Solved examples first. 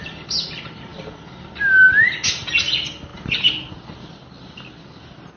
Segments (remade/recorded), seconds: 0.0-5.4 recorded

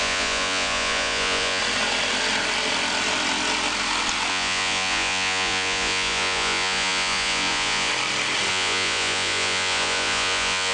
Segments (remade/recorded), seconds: 0.0-1.6 remade; 1.6-4.3 recorded; 4.3-7.9 remade; 7.9-8.5 recorded; 8.5-10.7 remade

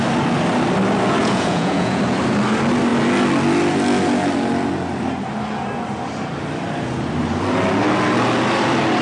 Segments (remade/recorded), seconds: 0.0-1.2 recorded; 1.2-2.0 remade; 2.0-9.0 recorded

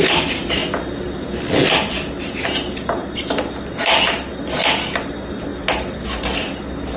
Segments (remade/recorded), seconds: 0.0-7.0 recorded

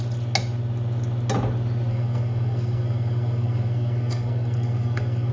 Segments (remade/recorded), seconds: 0.0-1.9 recorded; 1.9-5.3 remade

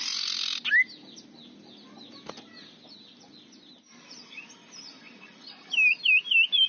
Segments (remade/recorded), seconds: 0.0-6.7 recorded

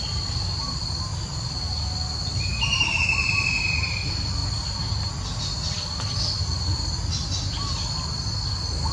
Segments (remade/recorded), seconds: 0.0-8.9 recorded

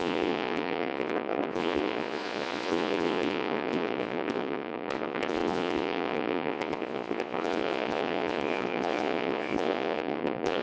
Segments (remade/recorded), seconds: 0.0-10.6 remade